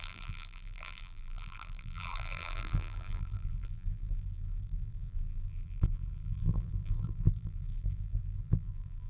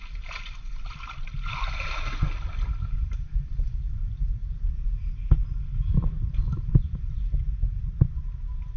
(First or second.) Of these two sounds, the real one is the second